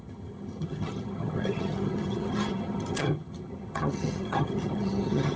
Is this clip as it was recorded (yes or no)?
no